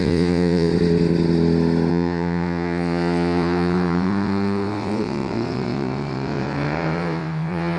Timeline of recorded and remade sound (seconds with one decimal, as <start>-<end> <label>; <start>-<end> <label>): 0.0-0.7 remade; 0.7-1.9 recorded; 1.9-7.8 remade